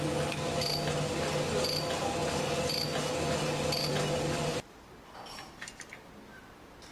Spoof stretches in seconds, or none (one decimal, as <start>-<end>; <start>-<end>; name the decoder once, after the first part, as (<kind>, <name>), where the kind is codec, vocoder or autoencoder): none